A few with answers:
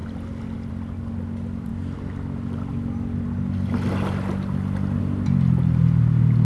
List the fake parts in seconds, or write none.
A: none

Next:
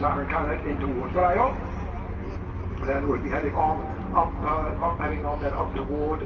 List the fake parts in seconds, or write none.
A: none

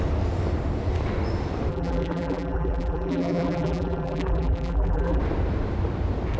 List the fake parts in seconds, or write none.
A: 1.7-5.2 (vocoder, BigVGAN v2)

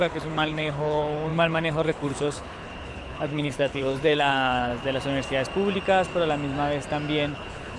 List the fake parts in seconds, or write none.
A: 0.0-4.7 (codec, HILCodec); 7.3-7.8

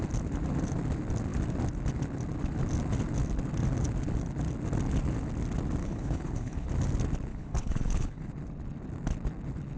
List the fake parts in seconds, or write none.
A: 5.8-6.7 (codec, HILCodec); 7.3-8.3

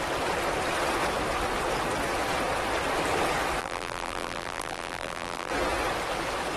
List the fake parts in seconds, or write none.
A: 3.6-5.5 (vocoder, BigVGAN v2)

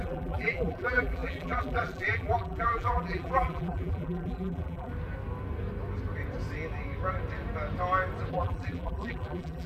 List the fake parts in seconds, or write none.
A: 0.0-4.9 (vocoder, BigVGAN v2); 8.3-9.7